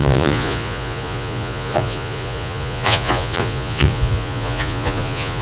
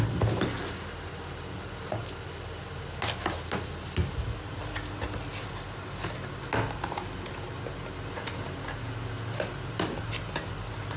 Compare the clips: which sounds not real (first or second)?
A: first